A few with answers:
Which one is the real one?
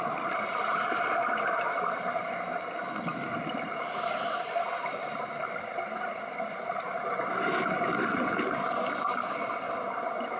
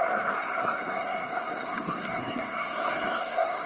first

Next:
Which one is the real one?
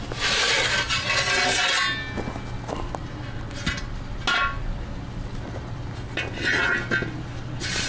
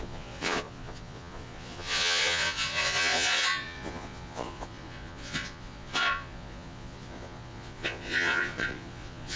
first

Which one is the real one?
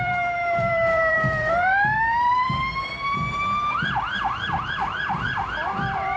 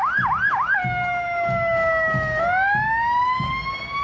second